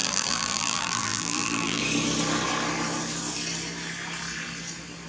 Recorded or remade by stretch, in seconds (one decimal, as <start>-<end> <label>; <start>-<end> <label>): 0.0-1.8 remade; 1.8-5.1 recorded